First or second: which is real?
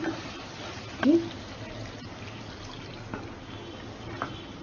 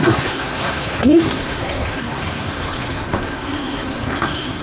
first